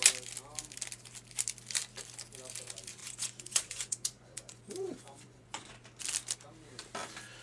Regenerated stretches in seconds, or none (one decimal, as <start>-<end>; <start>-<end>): 3.0-5.7